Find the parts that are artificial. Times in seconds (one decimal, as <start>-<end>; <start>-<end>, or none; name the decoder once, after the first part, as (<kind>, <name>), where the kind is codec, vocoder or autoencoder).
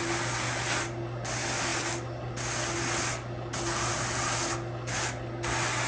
none